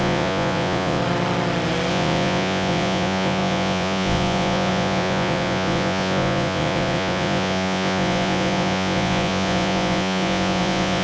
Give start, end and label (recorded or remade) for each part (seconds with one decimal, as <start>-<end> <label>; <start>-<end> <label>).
0.0-1.0 remade; 1.0-1.9 recorded; 1.9-11.0 remade